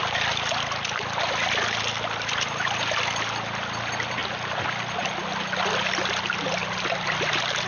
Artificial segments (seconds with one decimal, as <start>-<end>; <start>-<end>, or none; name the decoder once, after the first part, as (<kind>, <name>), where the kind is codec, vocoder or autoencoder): none